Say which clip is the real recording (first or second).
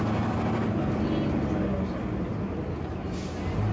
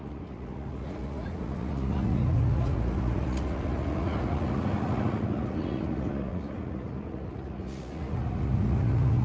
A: first